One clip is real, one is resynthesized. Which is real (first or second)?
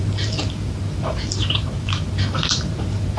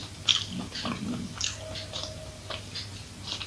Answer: second